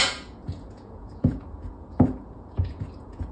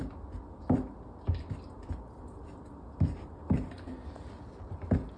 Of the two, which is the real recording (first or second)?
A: second